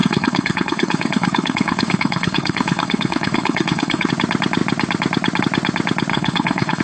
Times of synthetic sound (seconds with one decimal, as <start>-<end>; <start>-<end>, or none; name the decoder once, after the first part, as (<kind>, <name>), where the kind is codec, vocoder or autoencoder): 0.0-4.1 (codec, HILCodec); 6.1-6.8